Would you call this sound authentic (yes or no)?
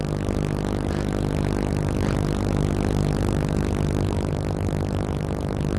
yes